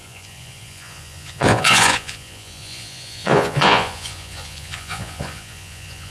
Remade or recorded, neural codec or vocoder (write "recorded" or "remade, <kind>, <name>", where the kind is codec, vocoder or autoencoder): remade, vocoder, Vocos